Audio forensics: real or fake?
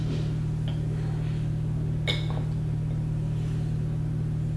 real